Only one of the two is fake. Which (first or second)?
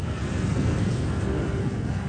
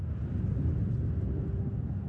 first